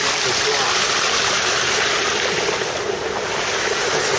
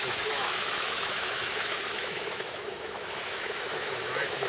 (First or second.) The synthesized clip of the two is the second